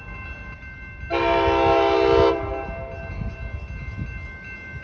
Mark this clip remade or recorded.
recorded